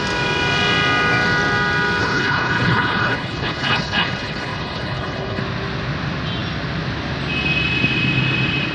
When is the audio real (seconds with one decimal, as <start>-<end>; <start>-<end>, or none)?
0.0-2.0; 5.4-8.7